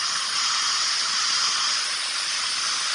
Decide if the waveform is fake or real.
real